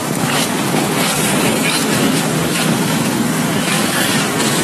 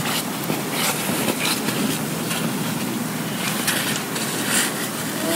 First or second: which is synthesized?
first